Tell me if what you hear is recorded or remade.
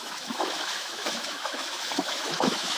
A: remade